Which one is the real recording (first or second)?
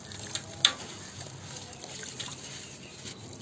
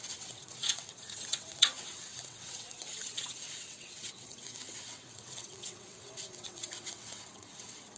first